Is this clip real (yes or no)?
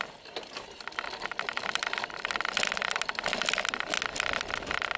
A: yes